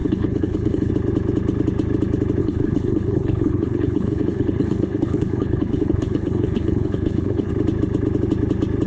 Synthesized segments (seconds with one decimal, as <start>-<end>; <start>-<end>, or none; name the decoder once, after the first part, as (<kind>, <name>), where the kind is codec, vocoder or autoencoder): 0.0-0.9 (codec, HILCodec); 2.4-7.5